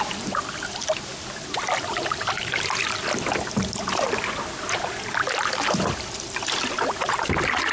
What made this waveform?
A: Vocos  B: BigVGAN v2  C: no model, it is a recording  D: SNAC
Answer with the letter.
C